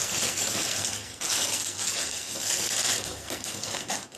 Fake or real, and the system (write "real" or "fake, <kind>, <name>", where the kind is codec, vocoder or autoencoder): fake, codec, SNAC